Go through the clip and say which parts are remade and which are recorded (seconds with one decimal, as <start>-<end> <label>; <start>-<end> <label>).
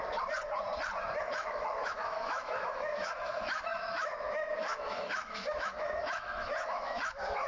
0.0-1.2 recorded; 1.2-7.5 remade